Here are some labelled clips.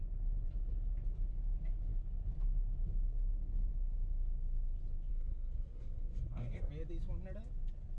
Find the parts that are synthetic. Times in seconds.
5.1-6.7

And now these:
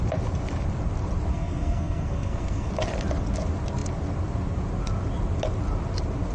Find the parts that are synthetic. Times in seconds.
1.3-2.7

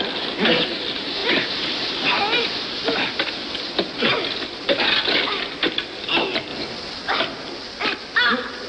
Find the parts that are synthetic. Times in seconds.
none

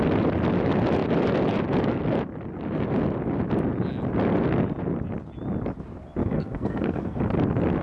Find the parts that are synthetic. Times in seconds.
6.2-7.2

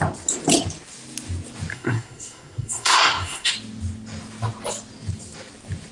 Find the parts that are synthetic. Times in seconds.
1.7-3.5

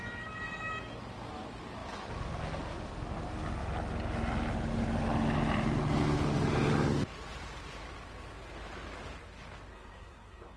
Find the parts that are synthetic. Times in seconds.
9.7-10.6